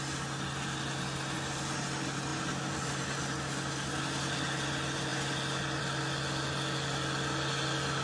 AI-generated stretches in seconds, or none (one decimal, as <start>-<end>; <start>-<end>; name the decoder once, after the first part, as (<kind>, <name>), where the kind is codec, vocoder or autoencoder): none